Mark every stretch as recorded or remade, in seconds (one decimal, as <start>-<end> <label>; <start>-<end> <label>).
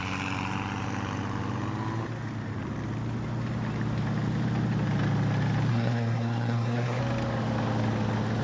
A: 0.0-5.7 recorded; 5.7-7.0 remade; 7.0-8.4 recorded